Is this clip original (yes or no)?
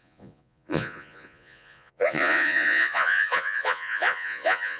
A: no